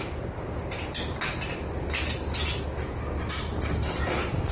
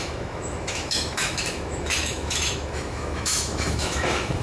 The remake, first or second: second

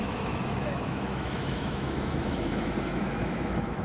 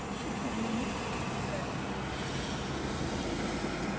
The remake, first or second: first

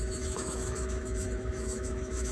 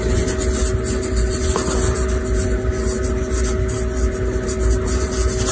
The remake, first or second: first